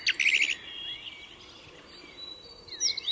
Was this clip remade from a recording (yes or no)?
no